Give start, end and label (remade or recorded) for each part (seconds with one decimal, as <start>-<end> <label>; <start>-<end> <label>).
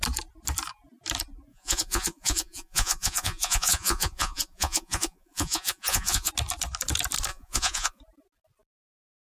0.0-1.5 recorded; 1.5-6.3 remade; 6.3-7.3 recorded; 7.3-8.0 remade; 8.0-9.4 recorded